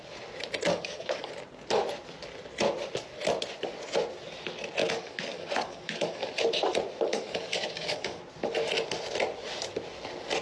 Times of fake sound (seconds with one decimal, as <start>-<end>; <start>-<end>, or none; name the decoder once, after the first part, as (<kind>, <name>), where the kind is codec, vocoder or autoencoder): 0.7-1.3 (codec, DAC); 4.8-6.3; 7.1-8.2